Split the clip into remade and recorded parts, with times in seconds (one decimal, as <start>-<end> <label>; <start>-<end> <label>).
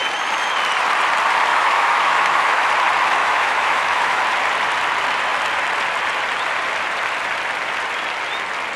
0.0-1.5 recorded; 1.5-2.7 remade; 2.7-3.2 recorded; 3.2-4.2 remade; 4.2-8.8 recorded